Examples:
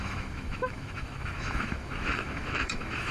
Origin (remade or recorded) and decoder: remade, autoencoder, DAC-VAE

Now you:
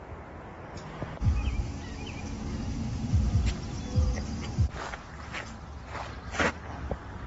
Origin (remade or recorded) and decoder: recorded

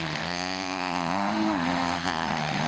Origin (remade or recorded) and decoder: remade, autoencoder, DAC-VAE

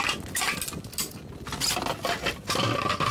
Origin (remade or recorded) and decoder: recorded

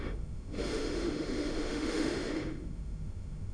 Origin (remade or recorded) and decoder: remade, autoencoder, DAC-VAE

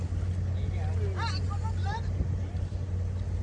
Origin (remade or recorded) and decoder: recorded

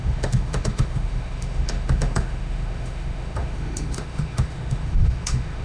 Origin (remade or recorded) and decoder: remade, autoencoder, DAC-VAE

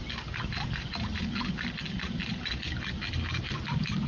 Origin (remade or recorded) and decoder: recorded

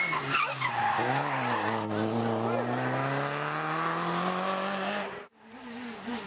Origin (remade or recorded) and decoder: recorded